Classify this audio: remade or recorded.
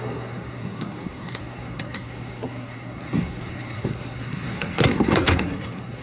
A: remade